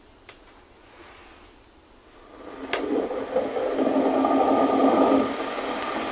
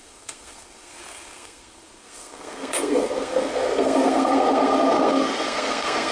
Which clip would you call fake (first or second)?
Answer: second